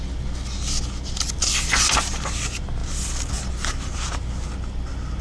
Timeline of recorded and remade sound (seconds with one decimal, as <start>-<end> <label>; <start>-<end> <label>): 0.0-5.2 recorded